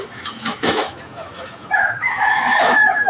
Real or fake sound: fake